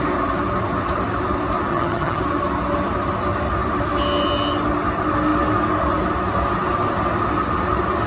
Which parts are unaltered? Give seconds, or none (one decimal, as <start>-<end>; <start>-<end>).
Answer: 0.0-1.7; 2.2-8.1